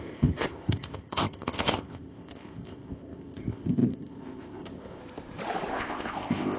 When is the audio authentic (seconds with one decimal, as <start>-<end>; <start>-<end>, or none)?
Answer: 5.0-5.7